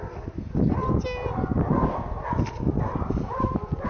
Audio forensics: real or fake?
real